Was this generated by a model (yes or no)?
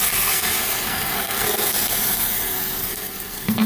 yes